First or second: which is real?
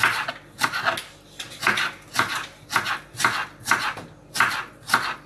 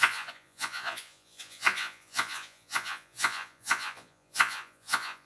first